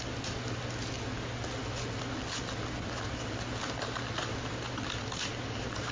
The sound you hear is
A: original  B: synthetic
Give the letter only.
A